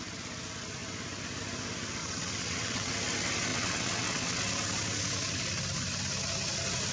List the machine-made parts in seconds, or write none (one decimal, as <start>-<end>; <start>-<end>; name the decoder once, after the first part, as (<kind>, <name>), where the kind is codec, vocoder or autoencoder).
2.0-2.9 (vocoder, WaveNeXt); 3.5-4.4